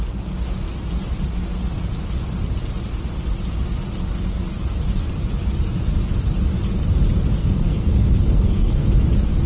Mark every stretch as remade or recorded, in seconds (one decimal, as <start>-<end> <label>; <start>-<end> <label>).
0.0-7.4 recorded; 7.4-8.9 remade; 8.9-9.5 recorded